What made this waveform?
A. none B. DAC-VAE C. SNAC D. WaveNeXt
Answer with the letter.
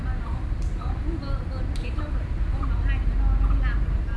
A